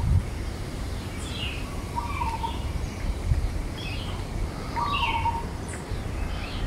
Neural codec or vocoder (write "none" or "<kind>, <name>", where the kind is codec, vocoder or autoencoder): vocoder, BigVGAN v2